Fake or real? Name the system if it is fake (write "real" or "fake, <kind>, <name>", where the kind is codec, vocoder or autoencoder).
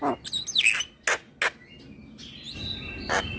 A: real